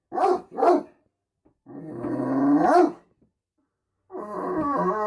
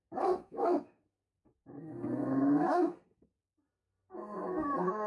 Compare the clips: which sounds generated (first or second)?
second